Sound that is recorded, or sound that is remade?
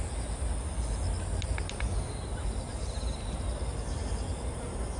recorded